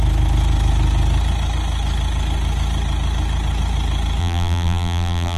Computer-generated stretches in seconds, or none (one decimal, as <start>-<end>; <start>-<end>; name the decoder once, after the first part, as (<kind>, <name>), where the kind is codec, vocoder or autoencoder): 4.2-5.4 (vocoder, BigVGAN v2)